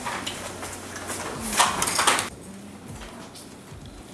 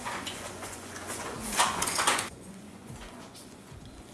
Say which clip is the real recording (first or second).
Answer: first